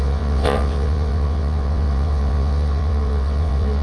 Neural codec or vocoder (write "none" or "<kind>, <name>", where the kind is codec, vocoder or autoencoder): vocoder, WaveNeXt